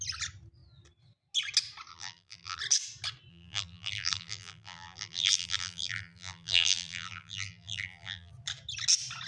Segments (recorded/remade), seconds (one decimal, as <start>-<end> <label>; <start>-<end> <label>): 0.0-1.9 recorded; 1.9-2.6 remade; 2.6-3.3 recorded; 3.3-8.3 remade; 8.3-9.3 recorded